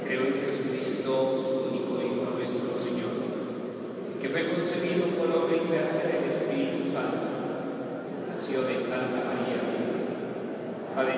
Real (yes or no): yes